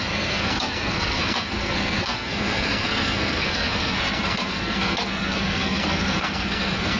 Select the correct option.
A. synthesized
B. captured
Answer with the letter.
A